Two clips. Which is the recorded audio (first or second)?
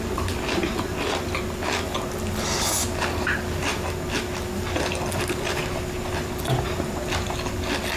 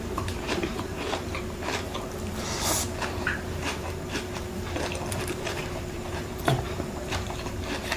first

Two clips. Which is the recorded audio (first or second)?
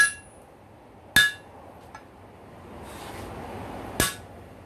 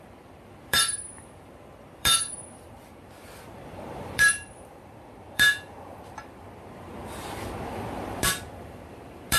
first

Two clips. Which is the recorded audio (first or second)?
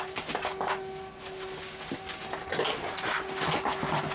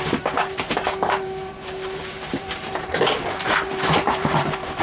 first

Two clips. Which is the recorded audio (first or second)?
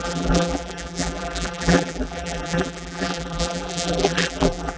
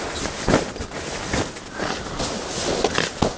second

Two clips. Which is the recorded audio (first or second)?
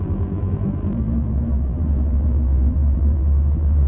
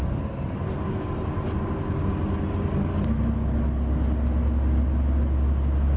second